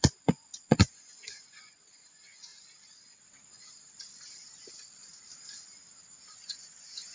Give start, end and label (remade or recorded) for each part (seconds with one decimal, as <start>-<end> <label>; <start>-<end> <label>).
0.0-2.5 remade; 2.5-6.3 recorded; 6.3-7.1 remade